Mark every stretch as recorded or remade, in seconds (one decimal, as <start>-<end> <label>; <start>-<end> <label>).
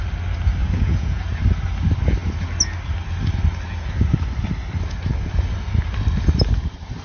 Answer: 0.0-0.6 recorded; 0.6-1.2 remade; 1.2-7.0 recorded